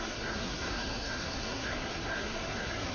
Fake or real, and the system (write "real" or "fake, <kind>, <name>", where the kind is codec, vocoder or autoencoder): fake, codec, SNAC